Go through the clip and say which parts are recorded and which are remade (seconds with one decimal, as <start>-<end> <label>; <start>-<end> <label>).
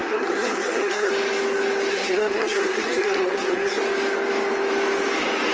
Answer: 0.0-1.1 remade; 1.1-1.9 recorded; 1.9-3.8 remade; 3.8-5.5 recorded